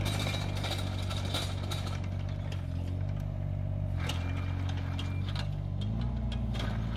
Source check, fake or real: real